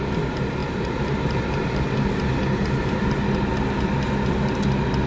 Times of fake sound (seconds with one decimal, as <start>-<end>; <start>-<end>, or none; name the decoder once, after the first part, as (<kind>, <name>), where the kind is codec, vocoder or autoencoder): 0.6-1.9 (vocoder, BigVGAN v2)